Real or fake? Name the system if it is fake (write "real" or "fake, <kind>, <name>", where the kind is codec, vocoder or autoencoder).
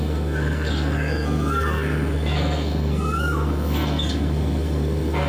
fake, codec, SNAC